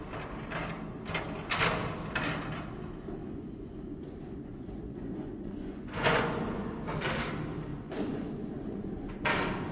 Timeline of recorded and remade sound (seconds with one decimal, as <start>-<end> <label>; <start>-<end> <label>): 0.0-3.2 recorded; 3.2-6.9 remade; 6.9-7.7 recorded; 7.7-9.1 remade; 9.1-9.7 recorded